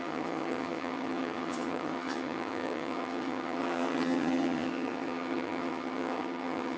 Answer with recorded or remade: remade